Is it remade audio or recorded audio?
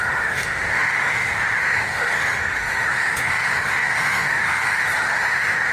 remade